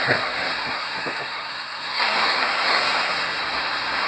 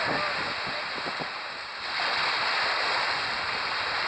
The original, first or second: second